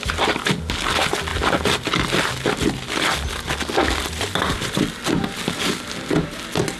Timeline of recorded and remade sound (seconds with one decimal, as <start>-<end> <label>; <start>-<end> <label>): 0.0-6.8 recorded